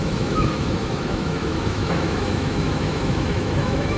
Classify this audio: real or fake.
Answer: fake